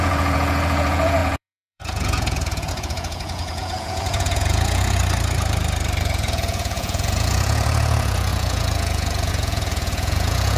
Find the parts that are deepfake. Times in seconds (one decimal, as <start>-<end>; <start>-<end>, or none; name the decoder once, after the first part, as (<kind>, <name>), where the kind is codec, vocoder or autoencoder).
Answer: 0.0-5.0 (vocoder, Vocos); 6.0-10.6